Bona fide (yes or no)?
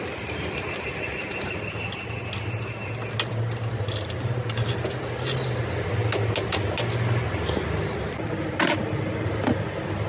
yes